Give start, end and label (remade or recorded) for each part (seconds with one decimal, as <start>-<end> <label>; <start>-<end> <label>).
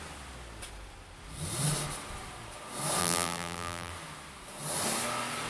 0.0-3.0 recorded; 3.0-3.9 remade; 3.9-5.5 recorded